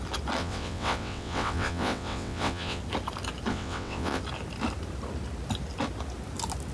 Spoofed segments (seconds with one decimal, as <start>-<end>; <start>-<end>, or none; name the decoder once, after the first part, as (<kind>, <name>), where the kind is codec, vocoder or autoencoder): 0.4-2.8 (vocoder, WaveNeXt); 3.5-4.2